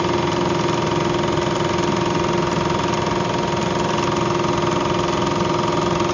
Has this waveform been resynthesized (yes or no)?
no